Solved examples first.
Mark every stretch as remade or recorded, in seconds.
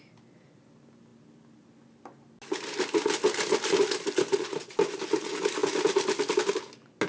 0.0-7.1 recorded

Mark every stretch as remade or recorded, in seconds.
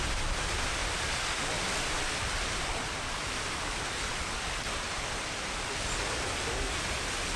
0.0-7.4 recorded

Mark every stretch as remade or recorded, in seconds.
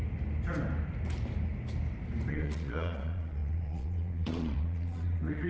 0.0-2.3 recorded; 2.3-5.5 remade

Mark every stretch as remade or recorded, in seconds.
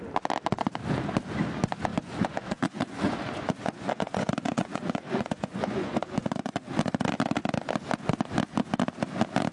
0.0-1.9 recorded; 1.9-6.5 remade; 6.5-9.5 recorded